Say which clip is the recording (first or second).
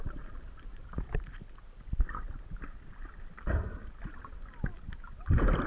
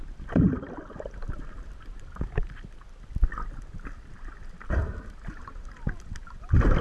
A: second